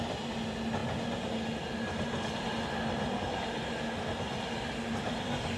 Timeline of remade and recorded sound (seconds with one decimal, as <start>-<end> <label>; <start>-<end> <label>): 0.0-5.6 recorded